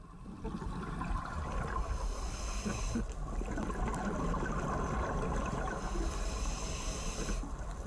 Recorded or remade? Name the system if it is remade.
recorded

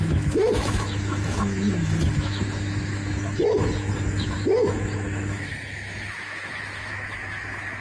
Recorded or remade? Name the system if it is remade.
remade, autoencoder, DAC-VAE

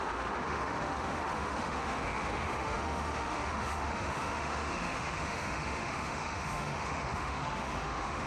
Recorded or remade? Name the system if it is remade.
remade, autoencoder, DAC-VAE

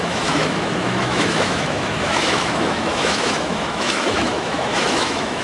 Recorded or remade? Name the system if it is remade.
remade, autoencoder, DAC-VAE